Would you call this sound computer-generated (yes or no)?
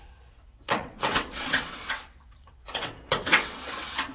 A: yes